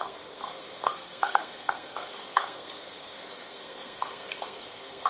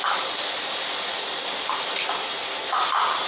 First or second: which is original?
second